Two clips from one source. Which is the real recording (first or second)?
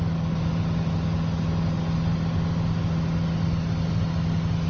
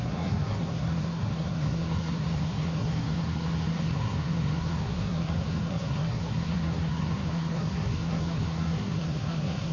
first